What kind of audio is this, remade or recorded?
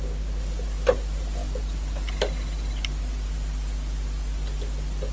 recorded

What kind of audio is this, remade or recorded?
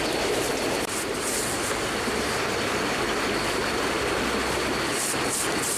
recorded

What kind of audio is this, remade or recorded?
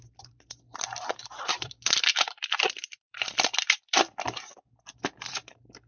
remade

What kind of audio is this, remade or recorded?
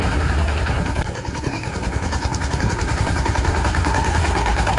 remade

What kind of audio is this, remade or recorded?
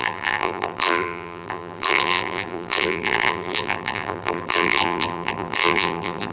remade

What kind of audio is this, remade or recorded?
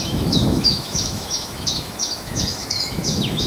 remade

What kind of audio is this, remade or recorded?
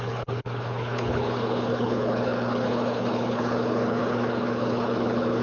remade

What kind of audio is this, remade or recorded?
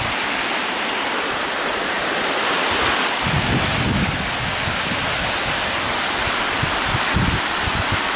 recorded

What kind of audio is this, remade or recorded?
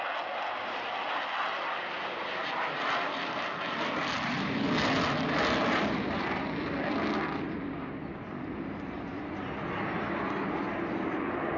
recorded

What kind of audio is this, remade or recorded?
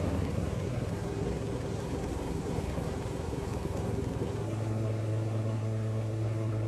remade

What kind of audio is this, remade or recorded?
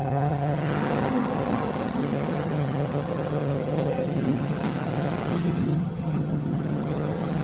remade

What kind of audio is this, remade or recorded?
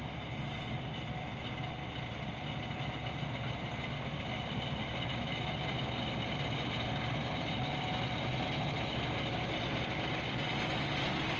recorded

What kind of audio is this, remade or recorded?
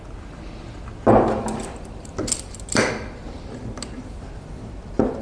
recorded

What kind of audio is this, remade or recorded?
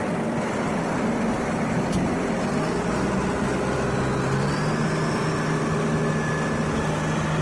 recorded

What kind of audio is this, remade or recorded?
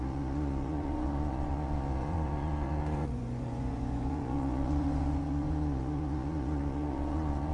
remade